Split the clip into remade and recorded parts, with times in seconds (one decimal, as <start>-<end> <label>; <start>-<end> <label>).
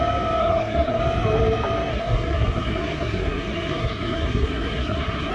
0.0-0.4 recorded; 0.4-1.0 remade; 1.0-1.9 recorded; 1.9-5.3 remade